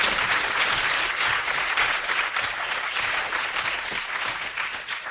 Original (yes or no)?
yes